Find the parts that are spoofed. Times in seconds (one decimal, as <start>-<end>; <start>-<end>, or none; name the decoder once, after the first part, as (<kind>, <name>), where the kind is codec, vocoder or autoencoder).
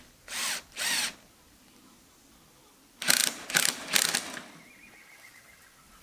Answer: none